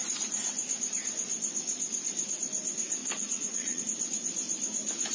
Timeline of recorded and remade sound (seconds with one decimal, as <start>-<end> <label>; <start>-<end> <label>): 0.0-3.0 recorded; 3.0-3.8 remade; 3.8-5.1 recorded